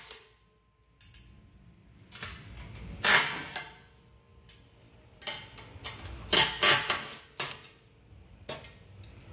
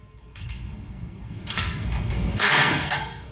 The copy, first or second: second